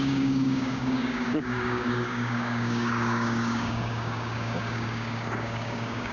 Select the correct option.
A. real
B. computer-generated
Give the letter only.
B